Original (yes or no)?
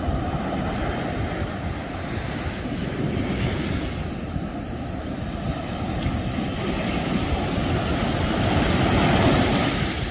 yes